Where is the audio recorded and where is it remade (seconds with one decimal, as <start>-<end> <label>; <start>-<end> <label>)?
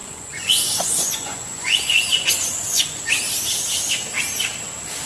0.0-3.1 remade; 3.1-5.1 recorded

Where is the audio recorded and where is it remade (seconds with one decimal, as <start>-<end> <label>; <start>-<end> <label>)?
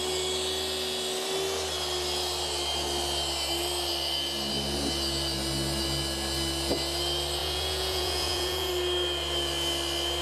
0.0-7.4 recorded; 7.4-8.7 remade; 8.7-10.2 recorded